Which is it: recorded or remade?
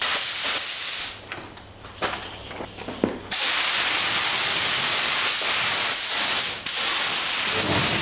recorded